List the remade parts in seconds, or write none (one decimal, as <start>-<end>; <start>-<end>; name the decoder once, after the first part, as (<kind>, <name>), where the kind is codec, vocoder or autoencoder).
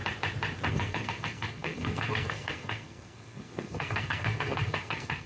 0.7-5.3 (codec, SNAC)